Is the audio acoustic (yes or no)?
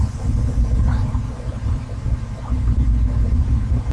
no